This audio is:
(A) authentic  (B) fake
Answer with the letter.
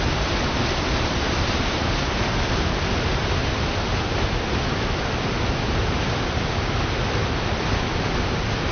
A